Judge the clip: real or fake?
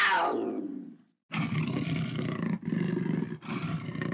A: real